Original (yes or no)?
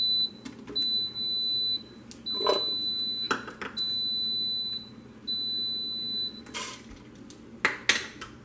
yes